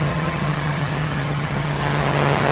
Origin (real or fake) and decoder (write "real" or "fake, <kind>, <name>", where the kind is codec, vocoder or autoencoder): fake, vocoder, HiFi-GAN